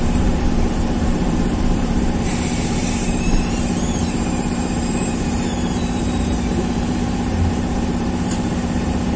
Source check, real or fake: fake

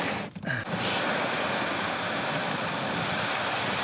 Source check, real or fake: real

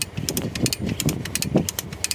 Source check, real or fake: real